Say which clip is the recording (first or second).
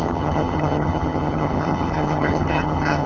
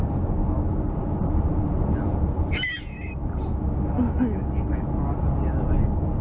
second